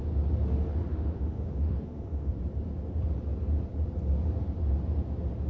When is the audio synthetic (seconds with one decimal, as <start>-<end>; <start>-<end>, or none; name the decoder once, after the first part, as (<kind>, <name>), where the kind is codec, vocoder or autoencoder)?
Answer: 0.9-2.3 (autoencoder, DAC-VAE)